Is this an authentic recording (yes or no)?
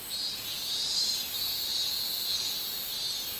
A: yes